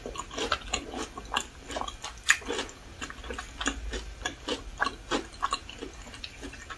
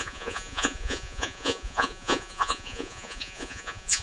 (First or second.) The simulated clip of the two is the second